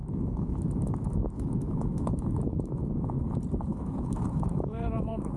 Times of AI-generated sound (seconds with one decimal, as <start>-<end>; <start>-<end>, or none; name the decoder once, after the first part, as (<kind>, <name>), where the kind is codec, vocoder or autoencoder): 0.0-3.2 (autoencoder, DAC-VAE); 3.7-5.4